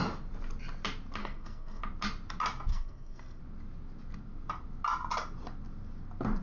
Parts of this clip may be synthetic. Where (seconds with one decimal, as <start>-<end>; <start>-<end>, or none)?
1.2-1.8; 2.7-3.4